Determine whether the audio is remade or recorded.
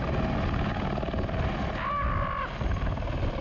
recorded